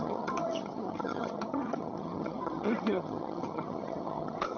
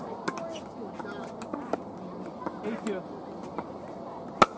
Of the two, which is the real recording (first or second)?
second